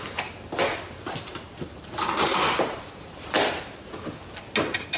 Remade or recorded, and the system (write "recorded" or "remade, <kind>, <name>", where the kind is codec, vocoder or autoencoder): recorded